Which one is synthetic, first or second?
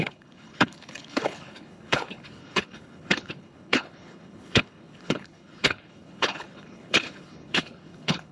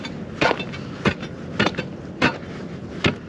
first